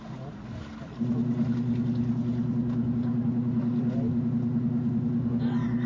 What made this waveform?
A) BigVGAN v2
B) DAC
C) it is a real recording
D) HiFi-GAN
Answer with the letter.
C